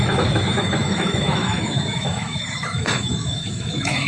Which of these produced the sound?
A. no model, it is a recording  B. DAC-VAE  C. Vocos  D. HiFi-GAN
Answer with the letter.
B